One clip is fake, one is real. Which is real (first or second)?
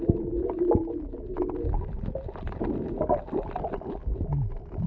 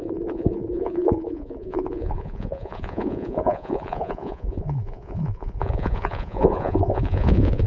first